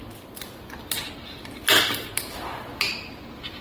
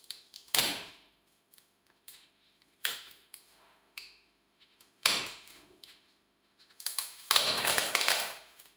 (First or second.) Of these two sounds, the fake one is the second